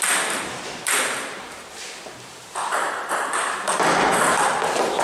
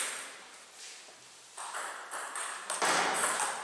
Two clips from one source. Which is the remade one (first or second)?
first